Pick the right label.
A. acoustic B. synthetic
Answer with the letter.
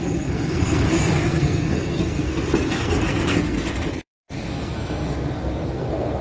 B